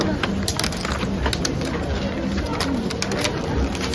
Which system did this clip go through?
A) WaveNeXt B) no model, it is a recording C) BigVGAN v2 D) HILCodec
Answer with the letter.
B